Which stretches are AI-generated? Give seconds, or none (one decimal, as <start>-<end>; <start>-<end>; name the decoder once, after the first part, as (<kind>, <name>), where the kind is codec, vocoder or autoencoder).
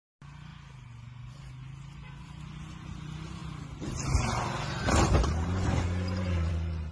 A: none